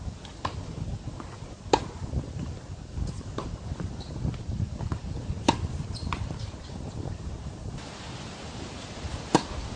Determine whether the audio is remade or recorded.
recorded